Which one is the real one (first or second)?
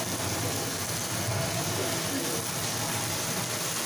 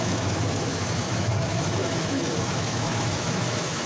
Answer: first